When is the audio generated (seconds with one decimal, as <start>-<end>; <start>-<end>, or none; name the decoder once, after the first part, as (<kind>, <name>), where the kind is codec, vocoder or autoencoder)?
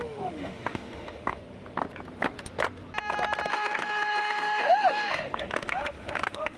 0.0-1.4 (autoencoder, DAC-VAE); 3.5-6.6